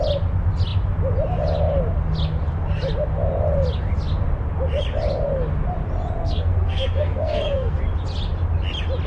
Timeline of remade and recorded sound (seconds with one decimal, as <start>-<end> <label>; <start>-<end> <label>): 0.0-6.2 recorded; 6.2-7.8 remade; 7.8-9.1 recorded